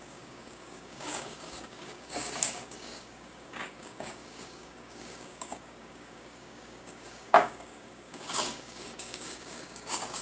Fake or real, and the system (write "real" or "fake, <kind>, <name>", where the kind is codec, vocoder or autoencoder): fake, codec, DAC